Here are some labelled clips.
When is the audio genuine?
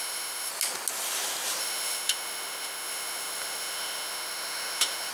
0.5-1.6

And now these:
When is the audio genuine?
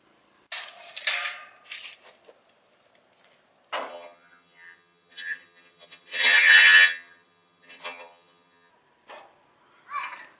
0.0-3.9; 8.7-10.4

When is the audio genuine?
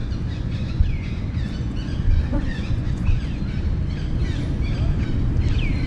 3.4-5.9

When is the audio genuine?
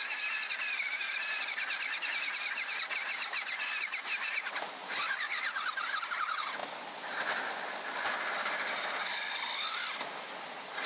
0.0-10.9